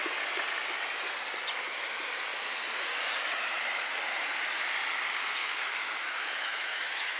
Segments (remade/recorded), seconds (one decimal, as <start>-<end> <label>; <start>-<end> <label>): 0.0-5.4 recorded; 5.4-7.2 remade